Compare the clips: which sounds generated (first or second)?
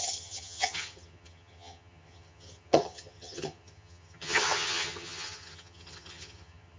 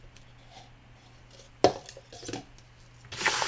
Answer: first